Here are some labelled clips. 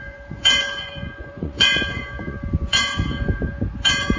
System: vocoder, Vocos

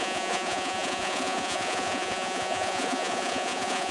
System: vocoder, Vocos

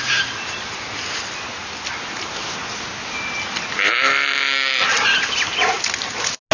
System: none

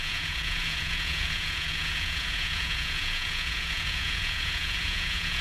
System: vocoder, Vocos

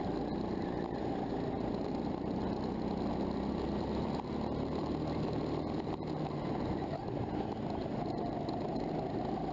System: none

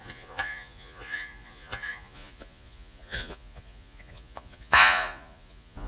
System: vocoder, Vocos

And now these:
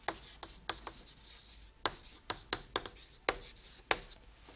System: none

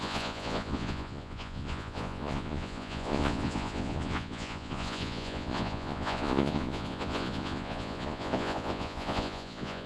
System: vocoder, Vocos